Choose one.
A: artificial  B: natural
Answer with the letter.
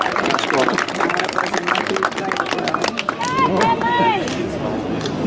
B